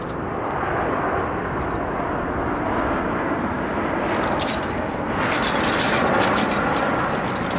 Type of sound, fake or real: real